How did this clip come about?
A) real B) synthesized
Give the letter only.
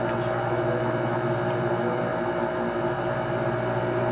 A